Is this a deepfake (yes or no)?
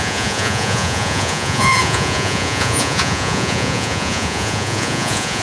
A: yes